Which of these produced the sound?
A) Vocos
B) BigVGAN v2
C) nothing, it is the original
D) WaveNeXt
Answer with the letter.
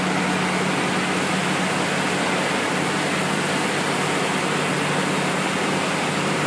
C